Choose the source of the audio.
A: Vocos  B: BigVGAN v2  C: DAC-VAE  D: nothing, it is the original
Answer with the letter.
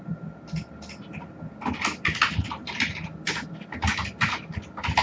D